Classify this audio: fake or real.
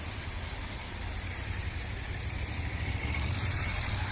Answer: fake